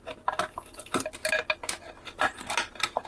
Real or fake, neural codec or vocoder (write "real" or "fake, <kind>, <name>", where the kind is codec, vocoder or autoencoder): real